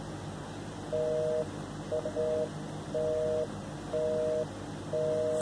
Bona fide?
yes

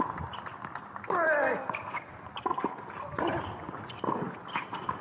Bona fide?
yes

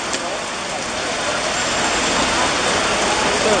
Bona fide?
yes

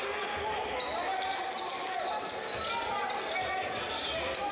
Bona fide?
yes